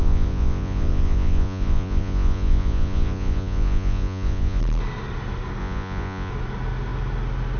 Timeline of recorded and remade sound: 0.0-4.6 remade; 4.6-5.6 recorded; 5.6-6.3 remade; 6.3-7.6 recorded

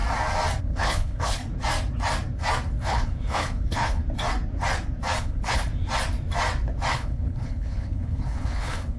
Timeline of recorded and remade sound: 0.0-0.6 recorded; 0.6-1.4 remade; 1.4-2.8 recorded; 2.8-4.0 remade; 4.0-5.2 recorded; 5.2-5.7 remade; 5.7-6.9 recorded; 6.9-9.0 remade

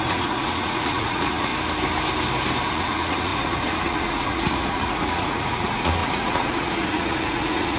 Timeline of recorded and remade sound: 0.0-1.5 remade; 1.5-2.7 recorded; 2.7-7.8 remade